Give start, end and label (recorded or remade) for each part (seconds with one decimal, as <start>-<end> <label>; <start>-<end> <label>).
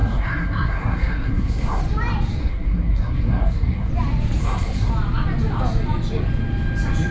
0.0-1.8 remade; 1.8-2.4 recorded; 2.4-3.9 remade; 3.9-4.4 recorded; 4.4-4.9 remade; 4.9-7.1 recorded